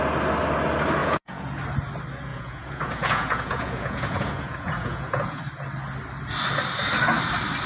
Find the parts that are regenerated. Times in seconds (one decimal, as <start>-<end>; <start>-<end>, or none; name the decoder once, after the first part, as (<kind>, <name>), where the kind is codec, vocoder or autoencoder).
1.0-1.6 (vocoder, Vocos); 2.3-5.4